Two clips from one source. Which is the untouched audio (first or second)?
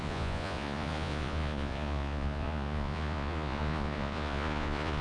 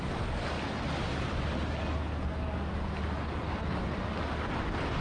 second